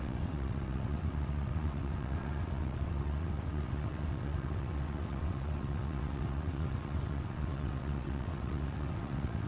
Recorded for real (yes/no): no